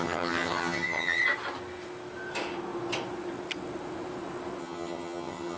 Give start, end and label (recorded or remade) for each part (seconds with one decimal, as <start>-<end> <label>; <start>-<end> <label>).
0.0-1.2 remade; 1.2-4.6 recorded; 4.6-5.6 remade